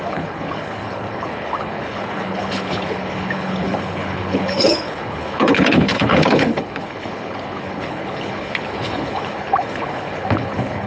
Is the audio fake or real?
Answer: fake